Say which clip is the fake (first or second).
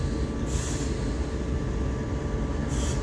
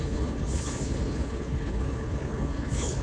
second